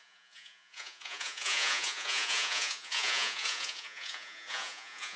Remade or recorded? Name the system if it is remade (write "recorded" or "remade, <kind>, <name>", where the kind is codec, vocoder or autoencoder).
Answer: remade, vocoder, Vocos